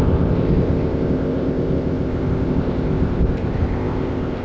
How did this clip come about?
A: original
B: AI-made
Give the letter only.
B